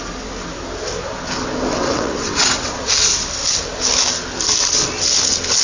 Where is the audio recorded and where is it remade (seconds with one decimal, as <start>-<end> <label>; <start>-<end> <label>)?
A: 0.0-1.7 recorded; 1.7-2.9 remade; 2.9-5.6 recorded